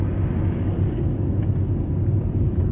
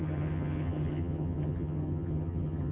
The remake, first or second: second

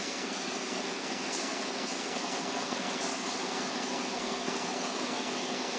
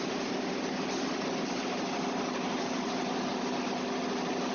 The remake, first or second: first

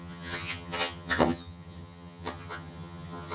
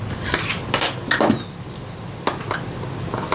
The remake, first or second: first